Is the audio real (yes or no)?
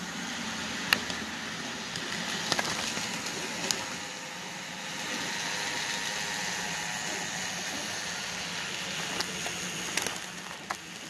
yes